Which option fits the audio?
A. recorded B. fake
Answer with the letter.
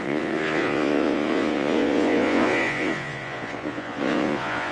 B